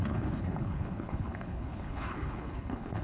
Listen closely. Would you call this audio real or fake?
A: fake